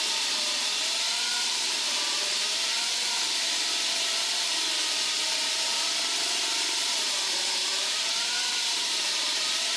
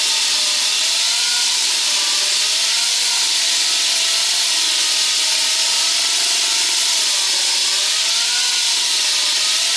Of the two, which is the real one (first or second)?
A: second